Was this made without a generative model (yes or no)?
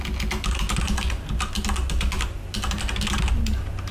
yes